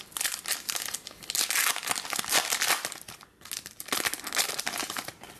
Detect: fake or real real